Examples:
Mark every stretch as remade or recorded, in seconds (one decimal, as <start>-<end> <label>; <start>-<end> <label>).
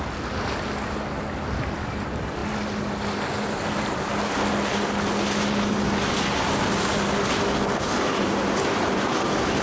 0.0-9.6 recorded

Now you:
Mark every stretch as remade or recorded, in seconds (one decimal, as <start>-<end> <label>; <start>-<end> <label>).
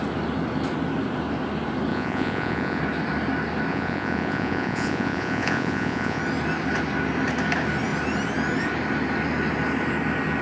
0.0-1.9 recorded; 1.9-2.8 remade; 2.8-3.7 recorded; 3.7-6.2 remade; 6.2-10.4 recorded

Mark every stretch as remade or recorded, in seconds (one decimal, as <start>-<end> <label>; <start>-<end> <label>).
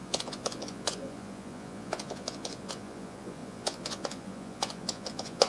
0.0-5.5 remade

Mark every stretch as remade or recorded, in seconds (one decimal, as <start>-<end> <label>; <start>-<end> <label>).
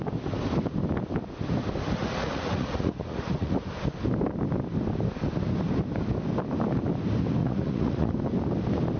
0.0-2.0 recorded; 2.0-3.7 remade; 3.7-7.4 recorded; 7.4-8.1 remade; 8.1-9.0 recorded